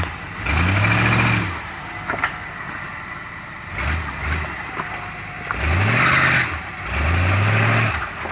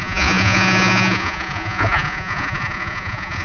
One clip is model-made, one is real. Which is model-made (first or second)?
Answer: second